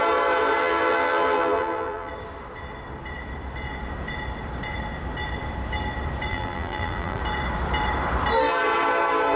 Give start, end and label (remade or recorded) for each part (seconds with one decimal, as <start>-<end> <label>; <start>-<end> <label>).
0.0-0.6 recorded; 0.6-2.1 remade; 2.1-6.3 recorded; 6.3-7.2 remade; 7.2-9.4 recorded